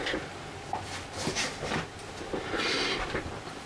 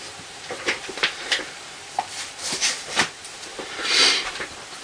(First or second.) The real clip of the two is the first